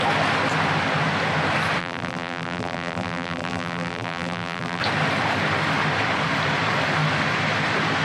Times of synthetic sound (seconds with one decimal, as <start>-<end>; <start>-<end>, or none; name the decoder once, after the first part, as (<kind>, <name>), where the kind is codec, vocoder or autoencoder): 1.8-4.8 (vocoder, BigVGAN v2)